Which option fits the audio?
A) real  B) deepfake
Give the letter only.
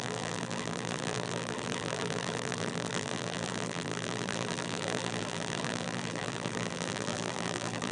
B